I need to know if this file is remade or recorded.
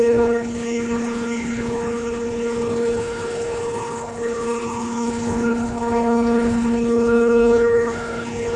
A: remade